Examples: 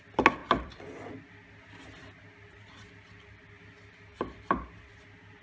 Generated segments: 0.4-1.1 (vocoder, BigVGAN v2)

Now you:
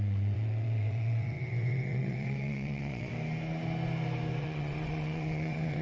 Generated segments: 0.0-3.1 (vocoder, WaveNeXt); 4.4-5.8

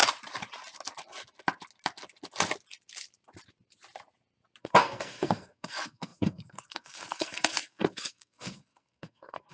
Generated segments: 4.6-9.5 (codec, SNAC)

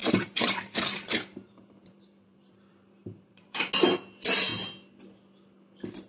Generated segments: 0.0-3.7 (vocoder, BigVGAN v2)

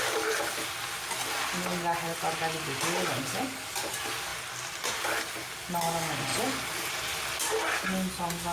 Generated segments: none

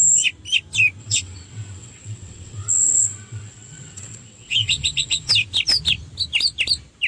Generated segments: 1.0-5.3 (vocoder, WaveNeXt)

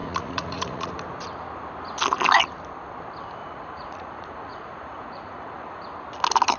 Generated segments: 0.0-0.9 (vocoder, Vocos); 3.4-5.8

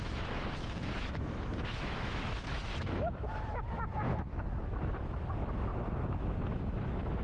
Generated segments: 0.0-5.7 (autoencoder, DAC-VAE); 6.5-7.2